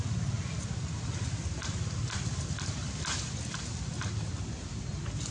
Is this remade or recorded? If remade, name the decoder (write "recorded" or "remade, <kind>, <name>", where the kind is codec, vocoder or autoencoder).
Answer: recorded